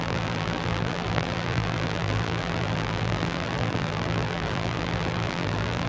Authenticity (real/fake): fake